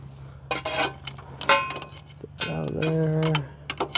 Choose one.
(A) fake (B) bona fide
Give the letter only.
B